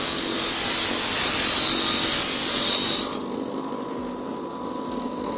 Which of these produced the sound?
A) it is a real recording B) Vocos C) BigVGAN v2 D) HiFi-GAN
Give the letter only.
A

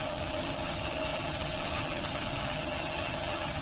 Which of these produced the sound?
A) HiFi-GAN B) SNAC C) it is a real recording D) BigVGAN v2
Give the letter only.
A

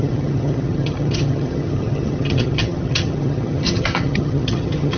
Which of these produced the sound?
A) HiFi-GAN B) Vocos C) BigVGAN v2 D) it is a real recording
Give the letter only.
A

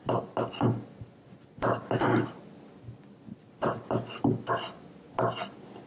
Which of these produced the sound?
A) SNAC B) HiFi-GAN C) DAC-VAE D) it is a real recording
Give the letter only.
D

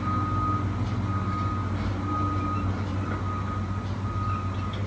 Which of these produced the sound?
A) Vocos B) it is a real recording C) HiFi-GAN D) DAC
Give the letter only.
B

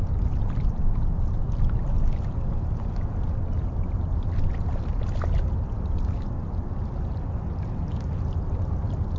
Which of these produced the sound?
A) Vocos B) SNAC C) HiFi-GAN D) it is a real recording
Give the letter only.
D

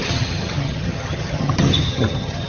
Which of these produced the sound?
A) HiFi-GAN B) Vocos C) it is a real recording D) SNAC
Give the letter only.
A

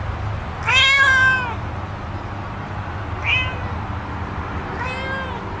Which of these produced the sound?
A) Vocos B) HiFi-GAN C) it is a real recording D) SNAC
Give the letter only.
C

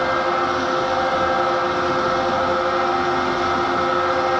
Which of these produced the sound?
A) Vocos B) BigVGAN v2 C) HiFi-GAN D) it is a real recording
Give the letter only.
D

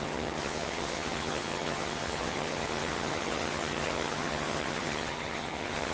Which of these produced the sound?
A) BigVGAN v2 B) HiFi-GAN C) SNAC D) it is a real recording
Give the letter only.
B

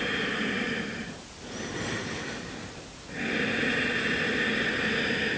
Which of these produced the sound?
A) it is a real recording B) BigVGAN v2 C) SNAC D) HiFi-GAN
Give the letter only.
A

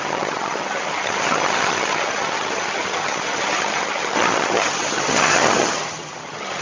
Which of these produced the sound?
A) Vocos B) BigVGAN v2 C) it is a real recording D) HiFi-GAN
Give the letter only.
D